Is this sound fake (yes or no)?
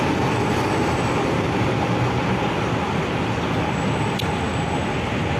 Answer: no